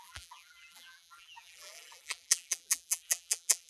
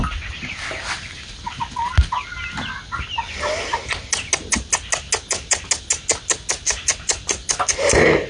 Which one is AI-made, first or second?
first